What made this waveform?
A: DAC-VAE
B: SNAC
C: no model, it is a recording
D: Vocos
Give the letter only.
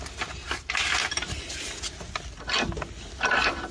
C